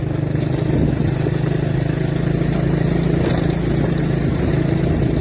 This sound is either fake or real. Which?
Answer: real